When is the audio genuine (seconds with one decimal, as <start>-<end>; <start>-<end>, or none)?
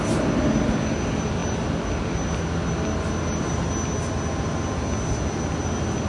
0.0-6.1